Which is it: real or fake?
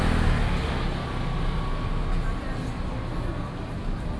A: real